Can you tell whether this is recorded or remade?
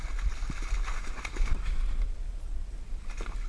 recorded